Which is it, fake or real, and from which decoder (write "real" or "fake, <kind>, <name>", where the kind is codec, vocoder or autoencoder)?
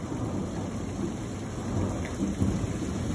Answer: real